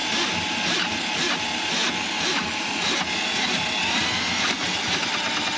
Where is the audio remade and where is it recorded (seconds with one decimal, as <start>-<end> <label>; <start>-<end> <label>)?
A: 0.0-5.6 recorded